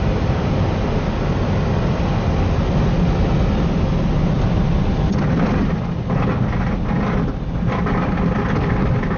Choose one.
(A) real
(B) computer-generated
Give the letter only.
A